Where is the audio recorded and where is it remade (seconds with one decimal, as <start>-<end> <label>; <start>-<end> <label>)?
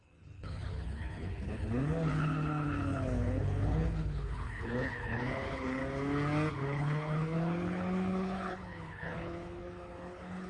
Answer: 0.0-5.8 remade; 5.8-6.5 recorded; 6.5-10.5 remade